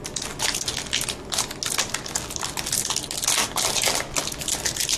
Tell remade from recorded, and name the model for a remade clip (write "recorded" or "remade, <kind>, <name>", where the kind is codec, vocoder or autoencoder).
recorded